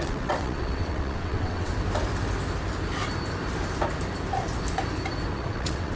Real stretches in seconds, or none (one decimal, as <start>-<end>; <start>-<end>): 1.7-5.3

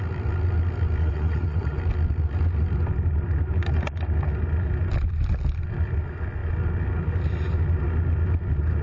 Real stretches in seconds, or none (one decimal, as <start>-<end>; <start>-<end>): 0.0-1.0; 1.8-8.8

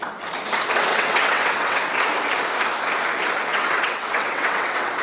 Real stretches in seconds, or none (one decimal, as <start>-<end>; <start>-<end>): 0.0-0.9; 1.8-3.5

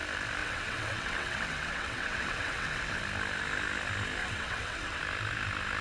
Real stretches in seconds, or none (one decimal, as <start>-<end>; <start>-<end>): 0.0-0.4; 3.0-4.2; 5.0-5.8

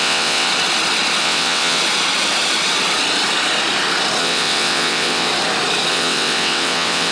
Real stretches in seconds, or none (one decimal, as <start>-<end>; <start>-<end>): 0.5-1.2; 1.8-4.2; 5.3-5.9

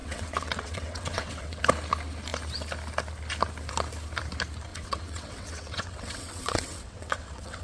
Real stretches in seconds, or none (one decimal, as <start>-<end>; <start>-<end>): 1.6-4.7

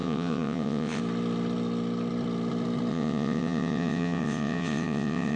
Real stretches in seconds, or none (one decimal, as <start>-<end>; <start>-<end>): 1.0-2.9

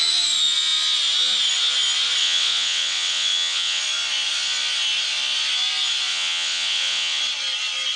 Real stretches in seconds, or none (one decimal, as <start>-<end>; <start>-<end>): 0.0-2.2; 3.8-6.1; 7.2-8.0